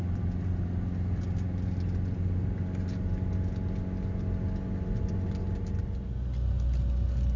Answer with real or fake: real